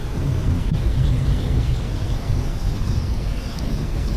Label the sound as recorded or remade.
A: remade